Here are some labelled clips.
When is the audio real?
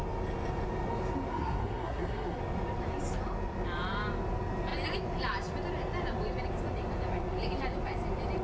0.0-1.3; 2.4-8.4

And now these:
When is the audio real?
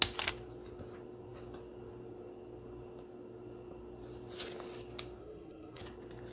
0.0-5.2; 5.8-6.3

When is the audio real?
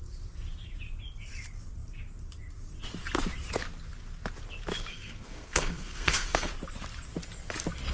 0.0-4.9; 6.5-7.9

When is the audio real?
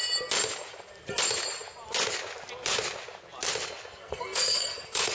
0.0-3.9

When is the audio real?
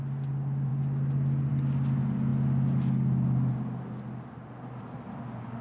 0.0-5.6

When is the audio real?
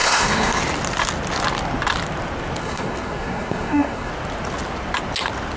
0.6-2.6; 4.1-5.6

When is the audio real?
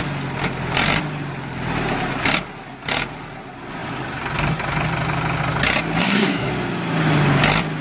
0.0-6.0; 6.5-7.8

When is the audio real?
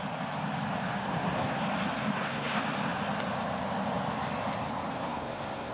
0.0-0.9; 1.6-2.0; 2.6-4.9